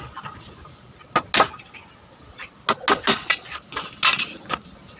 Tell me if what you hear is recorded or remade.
recorded